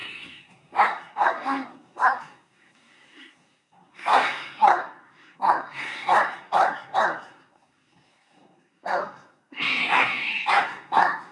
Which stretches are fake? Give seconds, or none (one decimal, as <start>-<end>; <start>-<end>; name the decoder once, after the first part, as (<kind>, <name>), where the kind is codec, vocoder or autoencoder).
0.0-11.3 (codec, SNAC)